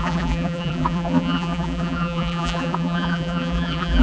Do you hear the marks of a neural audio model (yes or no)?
yes